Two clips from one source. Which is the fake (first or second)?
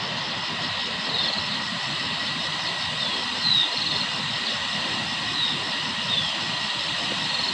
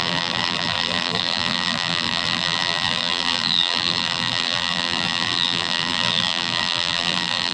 second